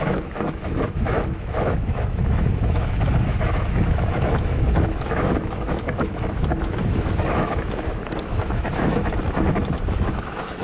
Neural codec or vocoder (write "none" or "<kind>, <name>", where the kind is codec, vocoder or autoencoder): autoencoder, DAC-VAE